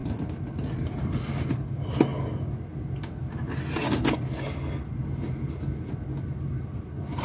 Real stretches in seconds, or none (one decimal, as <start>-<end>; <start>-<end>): 0.0-7.2

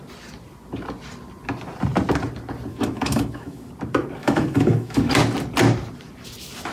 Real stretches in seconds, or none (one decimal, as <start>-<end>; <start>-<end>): 0.0-2.7; 3.7-4.2; 5.1-6.7

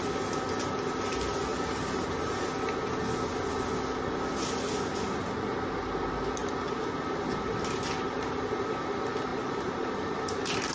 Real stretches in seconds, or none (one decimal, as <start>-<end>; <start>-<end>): 0.0-1.5; 2.4-6.4; 8.7-9.3; 9.9-10.7

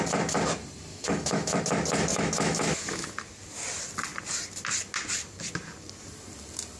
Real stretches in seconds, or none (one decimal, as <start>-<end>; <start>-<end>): 0.0-0.9; 1.6-2.1; 3.2-6.8

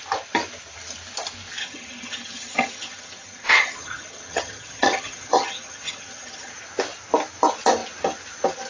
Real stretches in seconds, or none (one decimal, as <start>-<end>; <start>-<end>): 0.0-1.6; 6.5-8.7

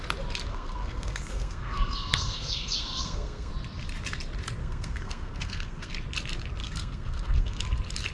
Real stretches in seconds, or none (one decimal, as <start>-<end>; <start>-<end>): 0.0-0.5; 3.5-4.6; 5.9-6.6; 7.6-8.1

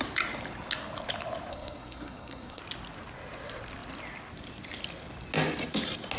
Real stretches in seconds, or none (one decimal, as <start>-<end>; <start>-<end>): 0.0-1.5; 2.6-6.2